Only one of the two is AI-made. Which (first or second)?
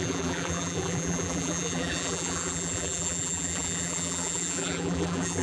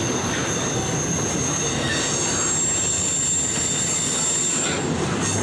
first